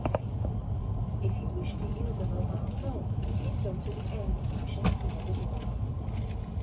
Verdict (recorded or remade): recorded